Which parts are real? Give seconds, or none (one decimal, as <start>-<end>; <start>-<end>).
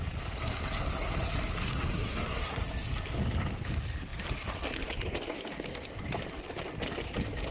0.0-1.9; 2.6-7.5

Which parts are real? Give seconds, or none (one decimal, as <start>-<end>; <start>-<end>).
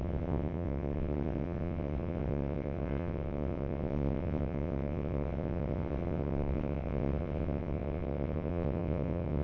none